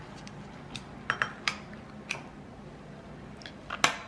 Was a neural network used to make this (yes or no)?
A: no